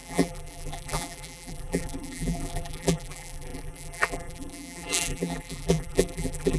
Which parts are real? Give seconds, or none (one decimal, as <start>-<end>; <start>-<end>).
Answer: none